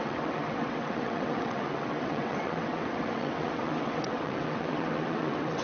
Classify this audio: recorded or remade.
remade